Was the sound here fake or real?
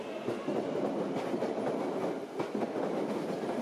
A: real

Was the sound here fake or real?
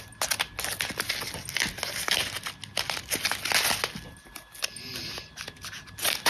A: real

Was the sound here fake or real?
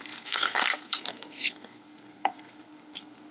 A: fake